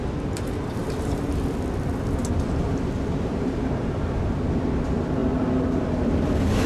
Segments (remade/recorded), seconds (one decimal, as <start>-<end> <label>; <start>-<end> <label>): 0.0-0.8 recorded; 0.8-1.3 remade; 1.3-2.6 recorded; 2.6-4.2 remade; 4.2-6.7 recorded